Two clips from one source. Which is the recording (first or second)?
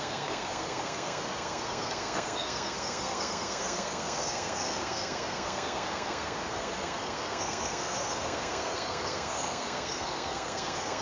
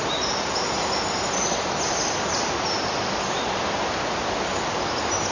second